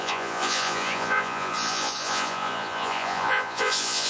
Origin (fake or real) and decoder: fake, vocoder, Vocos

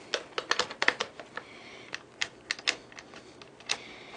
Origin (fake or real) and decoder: real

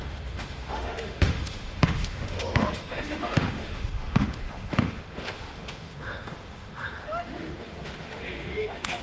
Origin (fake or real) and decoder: fake, autoencoder, DAC-VAE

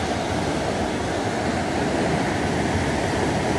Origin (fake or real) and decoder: real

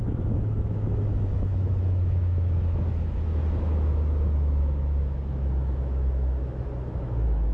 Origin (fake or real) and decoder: fake, autoencoder, DAC-VAE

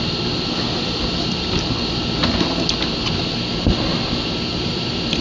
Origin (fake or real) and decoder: real